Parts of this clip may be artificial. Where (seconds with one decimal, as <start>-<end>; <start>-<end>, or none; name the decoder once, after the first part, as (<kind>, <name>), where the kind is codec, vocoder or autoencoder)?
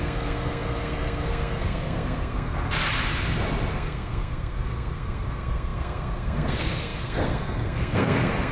0.0-2.5 (codec, SNAC); 3.7-8.5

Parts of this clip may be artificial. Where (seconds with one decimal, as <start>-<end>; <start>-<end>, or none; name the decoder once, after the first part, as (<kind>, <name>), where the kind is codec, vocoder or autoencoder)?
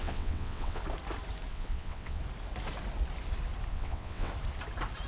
0.0-0.8 (vocoder, WaveNeXt); 1.5-2.2; 3.7-4.3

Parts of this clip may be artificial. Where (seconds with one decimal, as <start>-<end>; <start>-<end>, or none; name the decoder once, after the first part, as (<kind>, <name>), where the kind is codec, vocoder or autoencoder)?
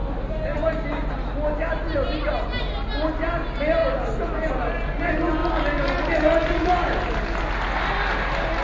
none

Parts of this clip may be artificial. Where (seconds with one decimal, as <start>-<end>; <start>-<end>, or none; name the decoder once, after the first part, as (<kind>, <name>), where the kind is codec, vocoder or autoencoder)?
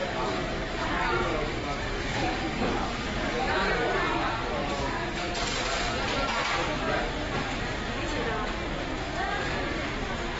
0.0-3.7 (codec, DAC); 4.6-5.3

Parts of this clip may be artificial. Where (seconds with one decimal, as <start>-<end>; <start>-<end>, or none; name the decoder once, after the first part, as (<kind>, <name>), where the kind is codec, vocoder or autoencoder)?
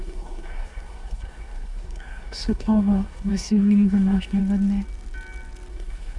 0.0-4.4 (codec, SNAC); 5.7-6.2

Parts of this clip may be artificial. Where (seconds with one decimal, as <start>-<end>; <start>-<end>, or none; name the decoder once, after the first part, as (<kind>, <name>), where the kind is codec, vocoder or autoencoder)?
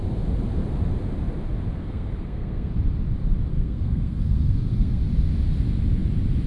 1.8-2.7 (codec, SNAC); 3.5-5.0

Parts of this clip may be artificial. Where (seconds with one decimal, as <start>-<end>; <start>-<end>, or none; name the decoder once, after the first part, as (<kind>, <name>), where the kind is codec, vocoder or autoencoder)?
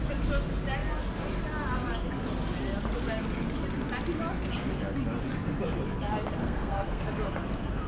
6.4-7.0 (codec, SNAC)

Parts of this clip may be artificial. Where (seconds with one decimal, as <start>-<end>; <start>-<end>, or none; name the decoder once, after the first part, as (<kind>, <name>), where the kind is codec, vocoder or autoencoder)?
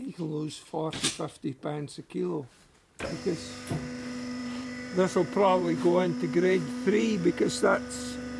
0.0-1.1 (vocoder, BigVGAN v2); 4.4-7.3